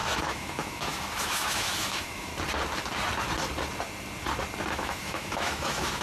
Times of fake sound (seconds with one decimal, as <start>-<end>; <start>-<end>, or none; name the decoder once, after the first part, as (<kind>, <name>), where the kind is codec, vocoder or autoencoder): 0.0-2.3 (autoencoder, DAC-VAE); 4.7-6.0